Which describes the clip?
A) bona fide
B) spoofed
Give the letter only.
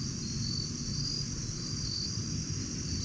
A